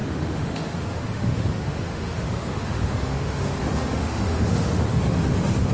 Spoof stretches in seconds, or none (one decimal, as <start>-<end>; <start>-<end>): 0.0-5.7